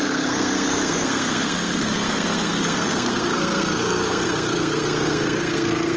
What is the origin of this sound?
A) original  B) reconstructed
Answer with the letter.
B